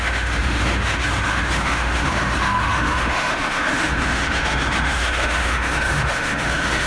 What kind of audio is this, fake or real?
fake